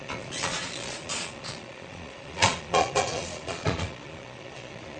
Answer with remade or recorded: remade